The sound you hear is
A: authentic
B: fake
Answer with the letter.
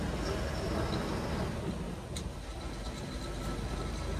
A